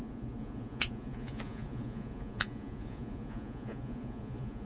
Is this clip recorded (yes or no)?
no